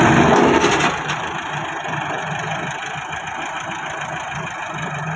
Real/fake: real